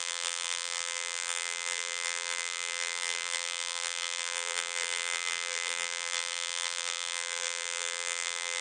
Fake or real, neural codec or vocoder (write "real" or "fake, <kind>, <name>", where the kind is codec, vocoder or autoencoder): fake, vocoder, BigVGAN v2